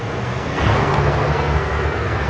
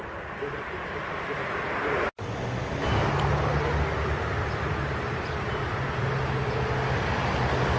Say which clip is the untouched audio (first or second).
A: second